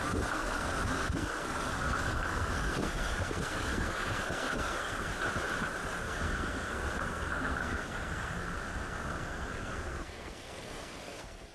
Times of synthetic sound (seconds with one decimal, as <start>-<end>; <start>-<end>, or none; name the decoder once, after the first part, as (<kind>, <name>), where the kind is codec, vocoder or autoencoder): 0.0-5.1 (codec, SNAC); 6.0-11.5